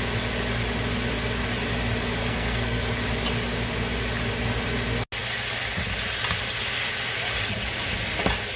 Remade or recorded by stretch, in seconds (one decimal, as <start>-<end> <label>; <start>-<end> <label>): 0.0-2.2 recorded; 2.2-2.8 remade; 2.8-8.6 recorded